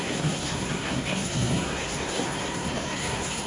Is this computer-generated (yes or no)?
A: yes